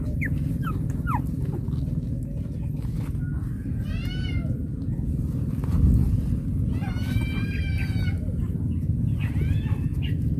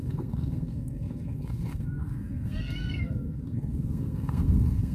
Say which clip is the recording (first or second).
first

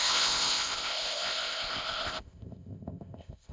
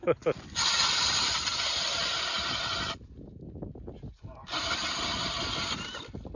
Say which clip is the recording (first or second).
second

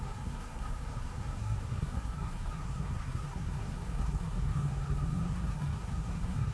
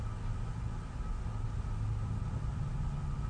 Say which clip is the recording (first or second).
second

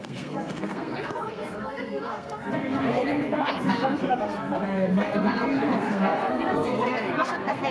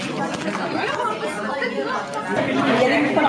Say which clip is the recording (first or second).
second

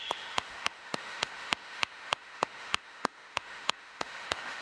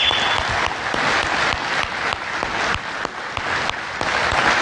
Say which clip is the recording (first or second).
second